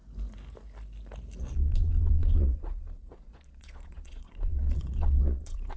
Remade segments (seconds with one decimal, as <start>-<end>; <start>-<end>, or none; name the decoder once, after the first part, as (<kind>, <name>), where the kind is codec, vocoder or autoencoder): 1.4-5.8 (vocoder, Vocos)